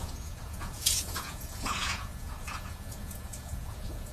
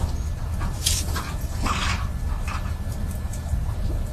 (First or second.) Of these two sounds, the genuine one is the second